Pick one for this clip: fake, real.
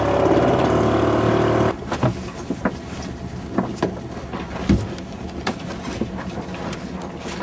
real